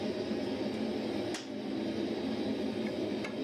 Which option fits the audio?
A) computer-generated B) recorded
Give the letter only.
B